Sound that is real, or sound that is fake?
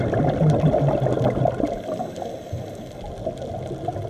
real